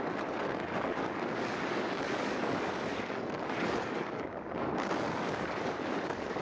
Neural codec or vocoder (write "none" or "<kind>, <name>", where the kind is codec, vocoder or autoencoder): codec, DAC